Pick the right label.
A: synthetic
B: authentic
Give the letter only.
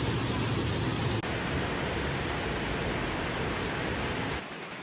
B